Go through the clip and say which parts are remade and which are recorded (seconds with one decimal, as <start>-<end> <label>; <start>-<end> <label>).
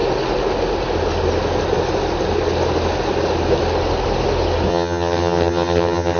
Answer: 0.0-4.7 recorded; 4.7-6.2 remade